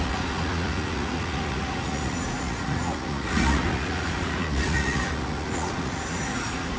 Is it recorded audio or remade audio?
remade